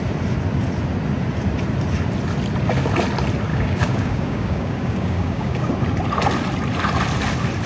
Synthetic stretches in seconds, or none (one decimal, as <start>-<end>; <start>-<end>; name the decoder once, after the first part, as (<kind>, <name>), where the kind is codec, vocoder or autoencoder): 3.5-5.7 (codec, DAC)